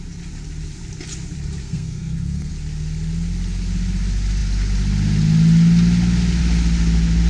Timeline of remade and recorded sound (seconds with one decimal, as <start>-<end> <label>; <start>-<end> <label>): 0.0-1.6 recorded; 1.6-2.5 remade; 2.5-7.3 recorded